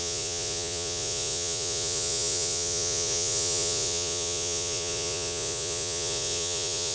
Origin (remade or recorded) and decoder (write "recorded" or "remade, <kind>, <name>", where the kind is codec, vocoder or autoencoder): remade, vocoder, Vocos